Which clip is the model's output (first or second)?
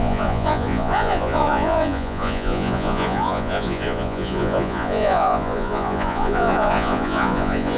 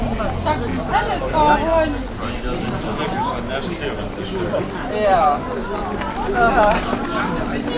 first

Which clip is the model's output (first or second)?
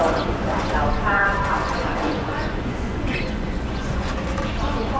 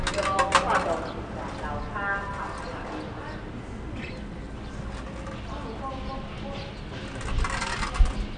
first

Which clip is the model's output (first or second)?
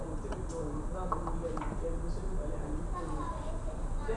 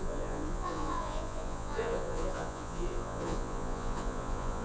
second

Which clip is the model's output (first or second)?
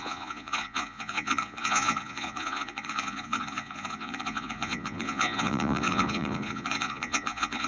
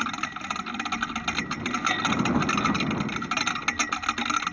first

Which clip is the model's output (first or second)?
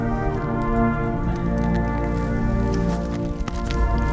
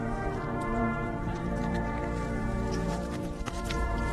second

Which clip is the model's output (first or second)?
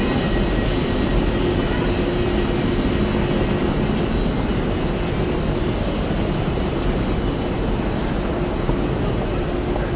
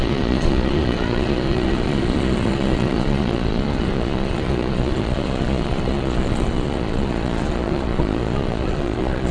second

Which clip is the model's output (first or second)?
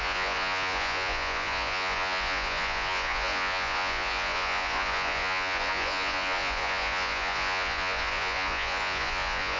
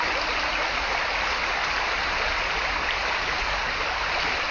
first